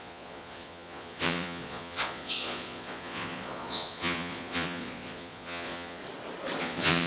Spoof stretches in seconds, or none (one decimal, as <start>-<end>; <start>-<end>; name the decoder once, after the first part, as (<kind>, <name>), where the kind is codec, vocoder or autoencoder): 0.0-6.0 (vocoder, Vocos); 6.6-7.1